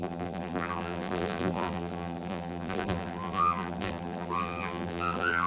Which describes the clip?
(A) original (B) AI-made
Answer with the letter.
B